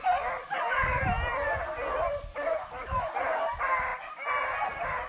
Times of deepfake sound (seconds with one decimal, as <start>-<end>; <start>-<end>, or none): 2.3-3.1